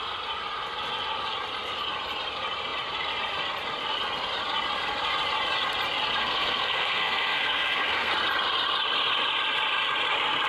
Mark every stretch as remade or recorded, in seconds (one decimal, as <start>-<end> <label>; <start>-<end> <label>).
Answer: 0.0-6.2 recorded; 6.2-8.1 remade; 8.1-10.5 recorded